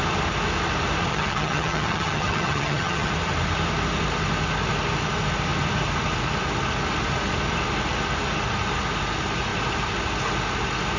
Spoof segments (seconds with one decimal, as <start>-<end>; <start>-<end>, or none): 1.1-3.1